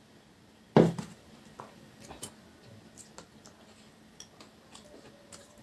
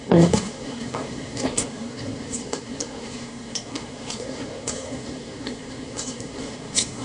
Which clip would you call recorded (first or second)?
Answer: first